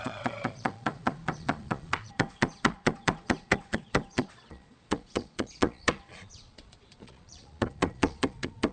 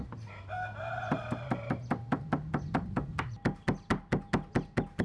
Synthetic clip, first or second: first